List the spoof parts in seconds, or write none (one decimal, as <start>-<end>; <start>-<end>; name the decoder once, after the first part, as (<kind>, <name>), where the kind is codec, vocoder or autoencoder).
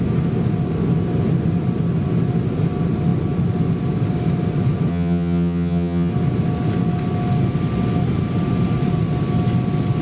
4.9-6.1 (vocoder, HiFi-GAN)